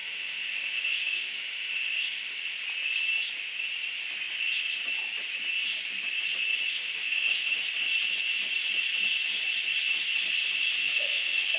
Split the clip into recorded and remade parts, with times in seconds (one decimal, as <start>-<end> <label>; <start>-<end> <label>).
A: 0.0-2.4 remade; 2.4-6.7 recorded; 6.7-7.7 remade; 7.7-10.8 recorded; 10.8-11.6 remade